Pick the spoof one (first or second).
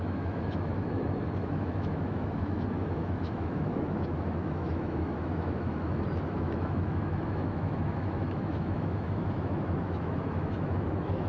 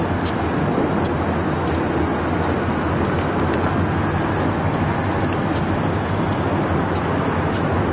first